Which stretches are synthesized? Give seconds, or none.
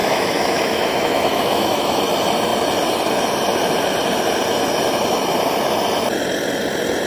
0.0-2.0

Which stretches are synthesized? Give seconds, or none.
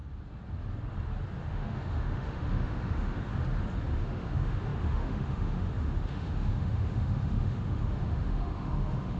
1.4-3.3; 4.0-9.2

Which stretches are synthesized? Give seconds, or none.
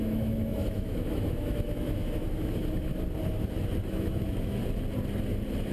0.0-2.9; 3.9-4.6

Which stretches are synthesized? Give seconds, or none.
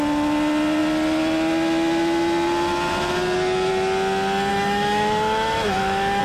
4.5-6.2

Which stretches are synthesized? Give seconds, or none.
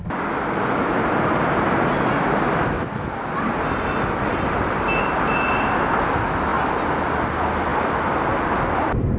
none